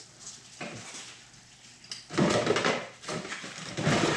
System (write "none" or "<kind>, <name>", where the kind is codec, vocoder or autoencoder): none